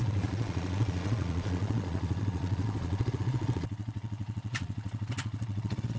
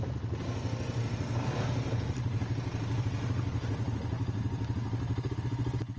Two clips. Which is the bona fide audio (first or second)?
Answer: second